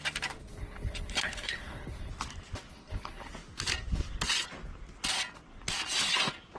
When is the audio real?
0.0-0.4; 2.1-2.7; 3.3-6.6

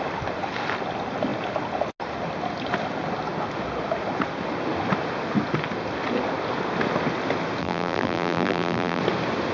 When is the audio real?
0.0-7.6; 9.0-9.5

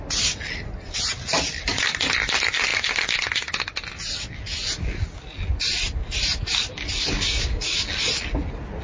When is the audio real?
0.0-7.0; 7.9-8.8

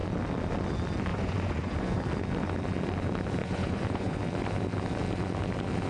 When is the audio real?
0.0-1.1; 2.0-3.4; 4.2-5.9

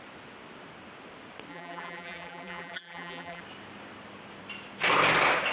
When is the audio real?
0.0-1.5; 3.4-5.5